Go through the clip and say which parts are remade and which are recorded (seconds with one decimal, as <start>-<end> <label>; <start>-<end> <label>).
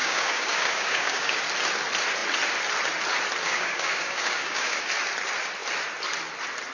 0.0-1.4 remade; 1.4-3.4 recorded; 3.4-4.8 remade; 4.8-6.7 recorded